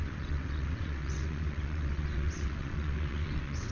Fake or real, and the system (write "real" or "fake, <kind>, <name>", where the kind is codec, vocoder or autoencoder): fake, vocoder, WaveNeXt